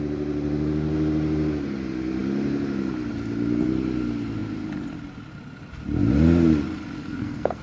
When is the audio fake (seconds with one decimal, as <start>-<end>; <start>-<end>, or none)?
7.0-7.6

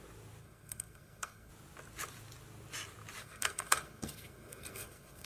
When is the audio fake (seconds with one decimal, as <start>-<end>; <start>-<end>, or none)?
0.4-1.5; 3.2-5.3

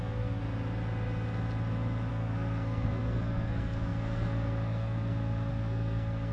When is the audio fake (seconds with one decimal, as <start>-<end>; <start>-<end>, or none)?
0.0-0.4; 2.1-6.3

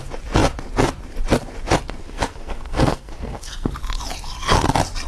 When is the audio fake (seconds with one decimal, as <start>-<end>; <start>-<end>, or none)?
2.0-3.7

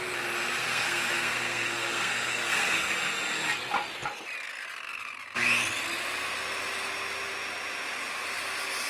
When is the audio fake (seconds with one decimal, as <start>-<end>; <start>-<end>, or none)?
0.6-2.9

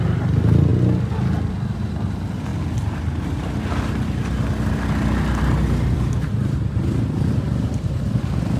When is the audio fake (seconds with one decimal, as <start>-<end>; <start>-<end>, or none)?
none

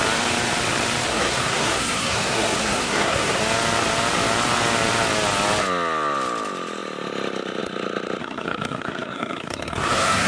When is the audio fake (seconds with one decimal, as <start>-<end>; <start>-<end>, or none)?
1.1-3.4; 8.2-10.3